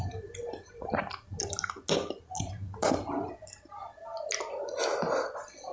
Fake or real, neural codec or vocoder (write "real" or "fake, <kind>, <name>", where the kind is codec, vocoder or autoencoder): real